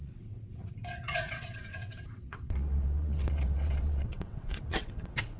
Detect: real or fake fake